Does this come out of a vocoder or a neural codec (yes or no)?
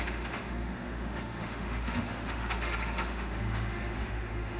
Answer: yes